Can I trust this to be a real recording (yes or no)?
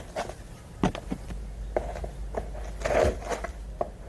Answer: yes